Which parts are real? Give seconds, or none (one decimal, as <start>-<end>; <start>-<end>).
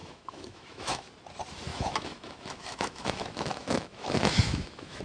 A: 1.1-1.7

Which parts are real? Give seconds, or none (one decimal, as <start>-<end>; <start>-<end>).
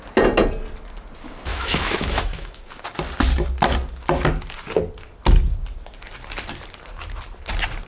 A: 0.0-1.5; 2.6-7.9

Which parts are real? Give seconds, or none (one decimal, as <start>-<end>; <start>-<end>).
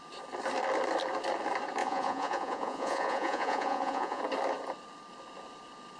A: 0.0-1.8; 4.2-6.0